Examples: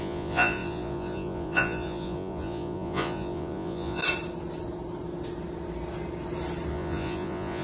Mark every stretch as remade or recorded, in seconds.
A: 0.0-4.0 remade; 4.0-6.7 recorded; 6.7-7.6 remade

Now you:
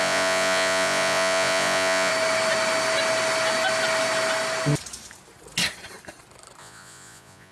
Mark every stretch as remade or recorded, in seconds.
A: 0.0-2.1 remade; 2.1-6.6 recorded; 6.6-7.5 remade